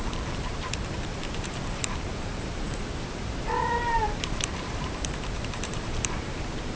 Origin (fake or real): fake